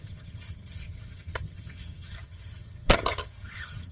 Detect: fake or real fake